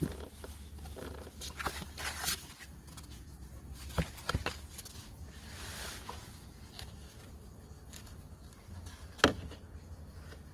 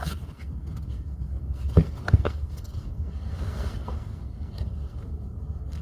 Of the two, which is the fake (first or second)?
second